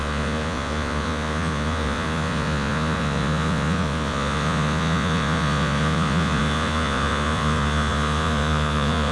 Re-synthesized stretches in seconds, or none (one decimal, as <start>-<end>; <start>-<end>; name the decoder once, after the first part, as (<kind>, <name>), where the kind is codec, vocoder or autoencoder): 0.0-9.1 (vocoder, Vocos)